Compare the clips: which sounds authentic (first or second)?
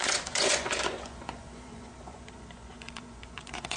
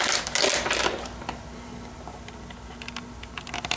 second